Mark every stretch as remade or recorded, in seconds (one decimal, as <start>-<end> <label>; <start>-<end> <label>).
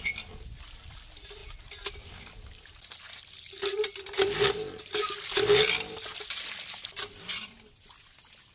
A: 0.0-8.5 recorded